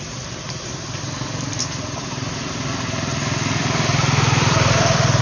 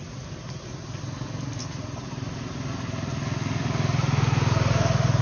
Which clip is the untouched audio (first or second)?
second